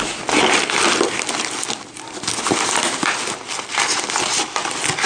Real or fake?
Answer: real